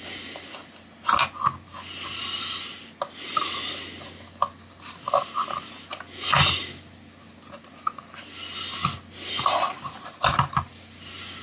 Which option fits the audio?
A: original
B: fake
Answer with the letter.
A